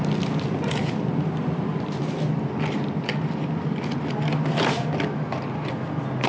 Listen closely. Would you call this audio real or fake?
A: real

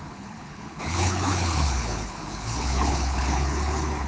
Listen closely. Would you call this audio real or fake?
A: fake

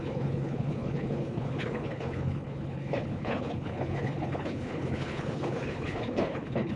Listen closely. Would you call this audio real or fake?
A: fake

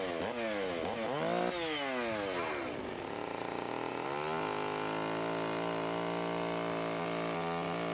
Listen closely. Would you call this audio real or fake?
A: real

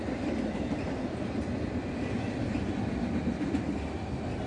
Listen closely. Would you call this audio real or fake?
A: real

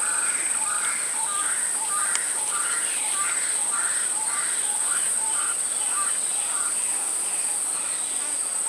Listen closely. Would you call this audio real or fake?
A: real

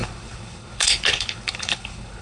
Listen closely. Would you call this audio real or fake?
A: fake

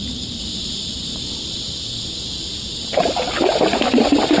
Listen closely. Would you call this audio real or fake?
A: real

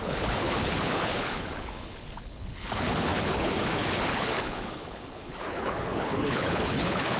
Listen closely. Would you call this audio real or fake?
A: fake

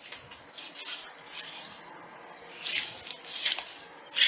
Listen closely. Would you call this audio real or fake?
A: real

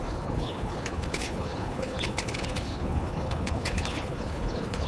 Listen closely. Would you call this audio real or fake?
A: fake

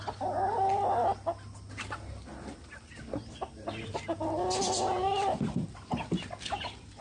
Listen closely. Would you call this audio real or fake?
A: real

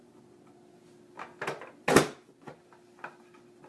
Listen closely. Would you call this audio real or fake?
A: real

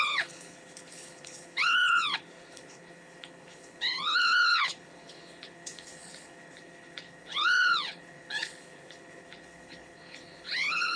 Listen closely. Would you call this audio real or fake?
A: fake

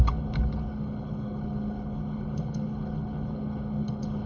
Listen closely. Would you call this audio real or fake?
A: fake